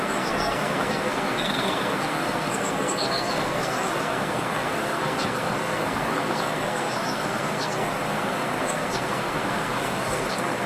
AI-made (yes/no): yes